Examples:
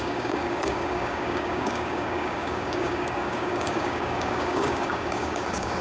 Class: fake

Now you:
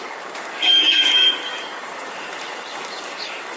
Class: fake